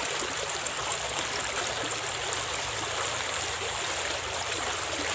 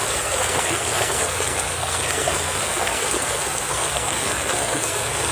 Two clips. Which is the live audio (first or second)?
first